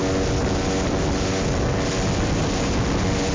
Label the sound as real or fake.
real